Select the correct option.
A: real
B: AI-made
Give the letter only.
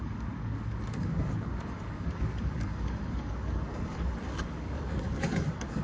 B